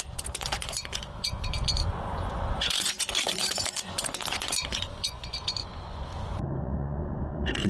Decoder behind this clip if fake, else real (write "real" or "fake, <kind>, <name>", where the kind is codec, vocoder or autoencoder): fake, vocoder, Vocos